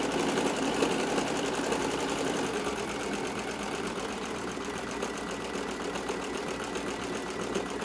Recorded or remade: remade